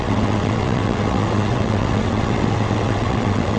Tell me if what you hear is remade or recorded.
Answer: remade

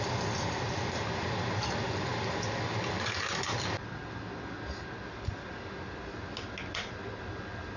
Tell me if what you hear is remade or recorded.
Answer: recorded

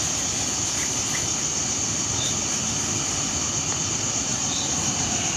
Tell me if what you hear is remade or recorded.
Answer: recorded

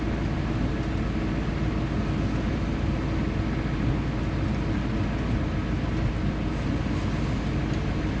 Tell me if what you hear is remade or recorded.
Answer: recorded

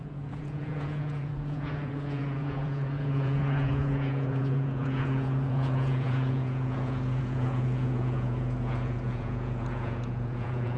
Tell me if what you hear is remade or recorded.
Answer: remade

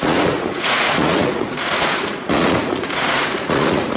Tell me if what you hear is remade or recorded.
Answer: remade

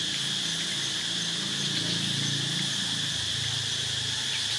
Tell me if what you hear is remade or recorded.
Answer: recorded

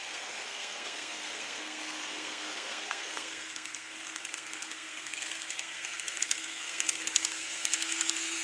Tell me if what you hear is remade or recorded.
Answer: remade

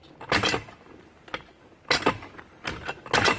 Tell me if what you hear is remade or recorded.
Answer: recorded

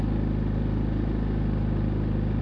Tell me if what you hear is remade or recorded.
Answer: recorded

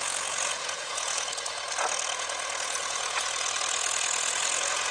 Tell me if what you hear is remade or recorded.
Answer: remade